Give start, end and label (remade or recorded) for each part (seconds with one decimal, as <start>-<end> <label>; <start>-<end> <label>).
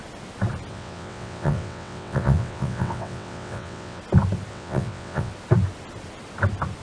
0.0-0.7 recorded; 0.7-4.0 remade; 4.0-4.5 recorded; 4.5-5.3 remade; 5.3-6.8 recorded